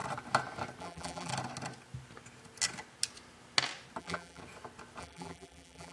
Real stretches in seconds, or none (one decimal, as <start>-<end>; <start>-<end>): 0.0-0.8; 1.3-4.0; 4.4-5.0